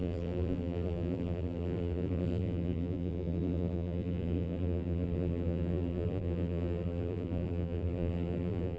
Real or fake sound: fake